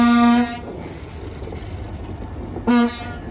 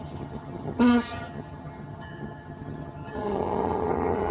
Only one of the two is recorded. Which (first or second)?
first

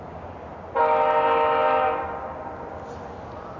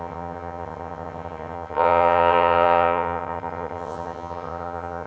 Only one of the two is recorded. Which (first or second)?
first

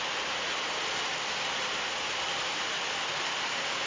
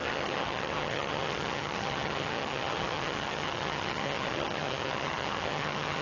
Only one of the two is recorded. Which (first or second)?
first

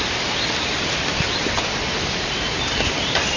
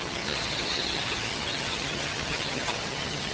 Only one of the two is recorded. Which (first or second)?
first